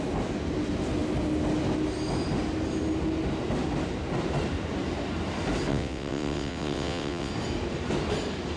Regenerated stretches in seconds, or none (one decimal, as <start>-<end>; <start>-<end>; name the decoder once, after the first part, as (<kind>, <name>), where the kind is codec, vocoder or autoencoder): 5.7-7.3 (vocoder, WaveNeXt)